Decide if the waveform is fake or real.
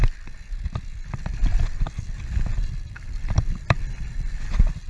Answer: fake